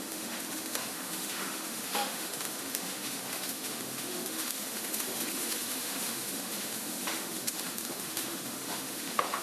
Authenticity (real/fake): fake